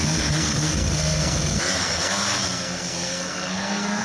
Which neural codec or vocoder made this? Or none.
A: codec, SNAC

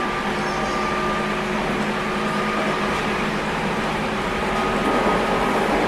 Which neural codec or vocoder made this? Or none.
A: none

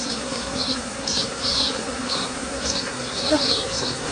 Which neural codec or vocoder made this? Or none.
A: codec, SNAC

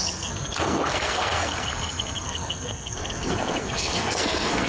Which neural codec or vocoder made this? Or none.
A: codec, SNAC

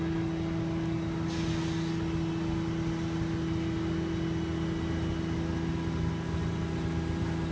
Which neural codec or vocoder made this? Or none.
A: none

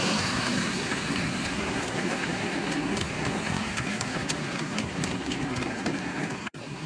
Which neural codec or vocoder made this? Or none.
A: codec, SNAC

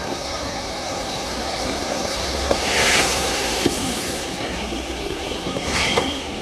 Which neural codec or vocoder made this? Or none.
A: codec, SNAC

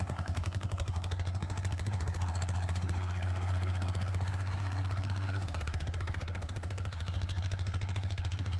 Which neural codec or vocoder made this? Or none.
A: codec, SNAC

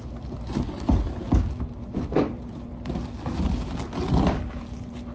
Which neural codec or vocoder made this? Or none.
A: none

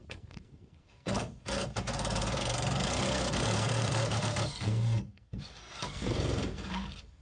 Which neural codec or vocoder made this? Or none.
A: codec, SNAC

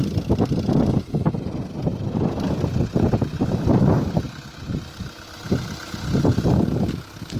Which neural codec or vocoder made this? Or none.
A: none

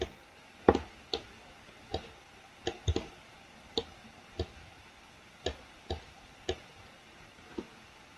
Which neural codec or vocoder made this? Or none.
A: none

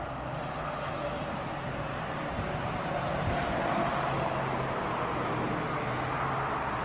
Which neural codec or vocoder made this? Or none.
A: none